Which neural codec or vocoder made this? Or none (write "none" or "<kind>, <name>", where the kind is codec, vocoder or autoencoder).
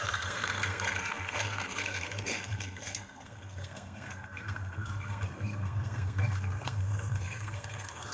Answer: codec, SNAC